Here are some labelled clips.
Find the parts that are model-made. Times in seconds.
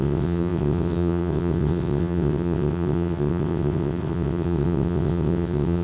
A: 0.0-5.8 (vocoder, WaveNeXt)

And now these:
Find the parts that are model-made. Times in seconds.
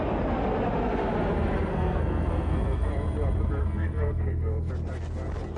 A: 1.7-2.9 (codec, SNAC); 3.6-4.7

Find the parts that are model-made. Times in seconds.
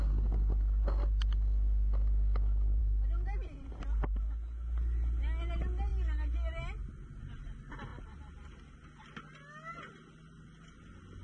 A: none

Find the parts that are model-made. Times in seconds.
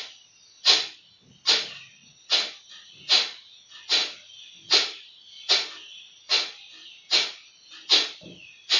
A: none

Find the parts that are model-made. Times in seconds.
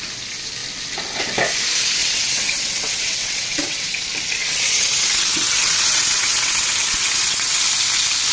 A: 2.0-4.0 (vocoder, WaveNeXt); 4.4-7.6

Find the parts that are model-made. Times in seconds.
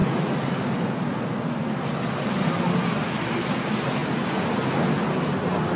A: none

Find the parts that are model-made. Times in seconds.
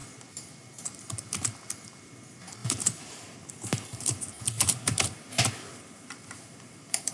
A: 2.6-7.1 (vocoder, BigVGAN v2)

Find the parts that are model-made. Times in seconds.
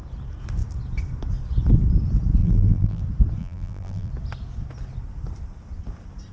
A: 2.4-3.0 (vocoder, BigVGAN v2); 3.4-4.1